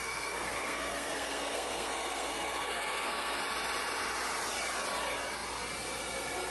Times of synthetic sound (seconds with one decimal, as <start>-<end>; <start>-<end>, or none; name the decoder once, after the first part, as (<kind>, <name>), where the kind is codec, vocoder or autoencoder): 0.0-3.4 (codec, SNAC)